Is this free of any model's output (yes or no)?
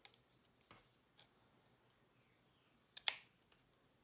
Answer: yes